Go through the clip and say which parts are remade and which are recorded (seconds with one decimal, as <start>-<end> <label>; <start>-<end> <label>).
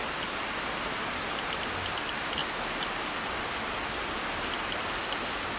0.0-5.6 recorded